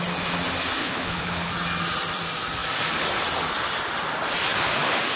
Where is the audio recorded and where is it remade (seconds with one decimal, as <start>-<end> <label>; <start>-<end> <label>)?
0.0-0.8 recorded; 0.8-1.5 remade; 1.5-5.2 recorded